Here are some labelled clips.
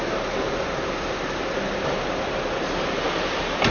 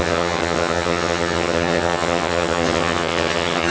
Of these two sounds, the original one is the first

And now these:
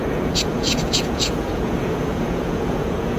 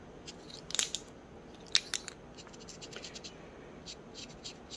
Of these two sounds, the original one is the second